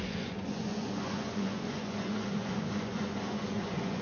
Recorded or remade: remade